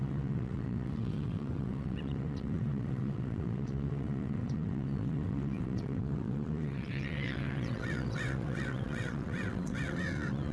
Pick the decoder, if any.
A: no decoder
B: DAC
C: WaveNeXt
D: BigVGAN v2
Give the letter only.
C